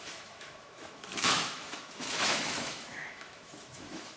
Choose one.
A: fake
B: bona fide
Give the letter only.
A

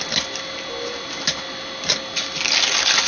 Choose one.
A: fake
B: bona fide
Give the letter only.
B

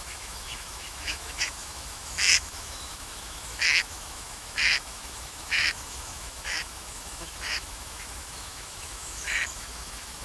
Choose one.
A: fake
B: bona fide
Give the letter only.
A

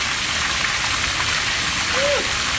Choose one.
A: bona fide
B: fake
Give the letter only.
A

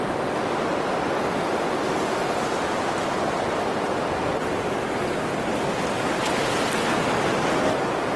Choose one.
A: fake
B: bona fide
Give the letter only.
B